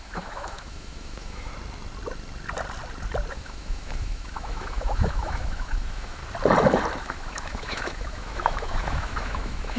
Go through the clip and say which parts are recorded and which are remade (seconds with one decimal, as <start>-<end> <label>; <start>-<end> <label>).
0.0-1.5 remade; 1.5-3.3 recorded; 3.3-6.2 remade; 6.2-7.0 recorded; 7.0-9.8 remade